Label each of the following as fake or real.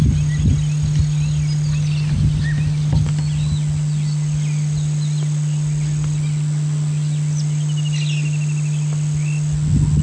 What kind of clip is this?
real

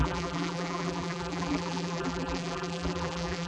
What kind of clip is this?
fake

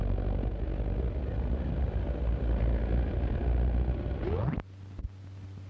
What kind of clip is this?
real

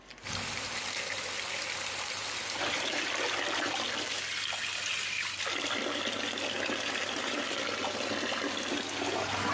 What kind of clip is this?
fake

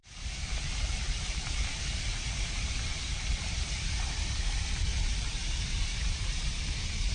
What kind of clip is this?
fake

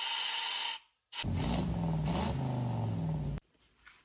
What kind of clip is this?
real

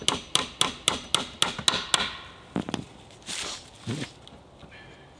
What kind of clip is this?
real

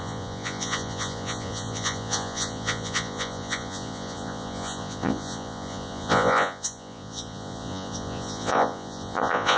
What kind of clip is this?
fake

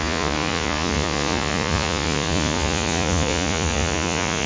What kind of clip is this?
fake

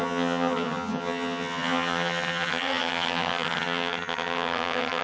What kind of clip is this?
fake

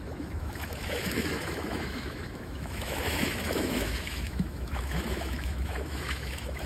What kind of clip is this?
fake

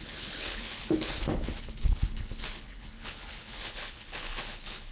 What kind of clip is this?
fake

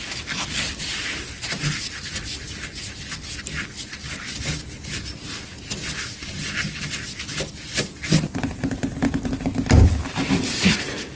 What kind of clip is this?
real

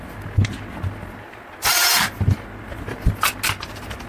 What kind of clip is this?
real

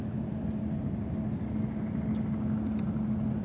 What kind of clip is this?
real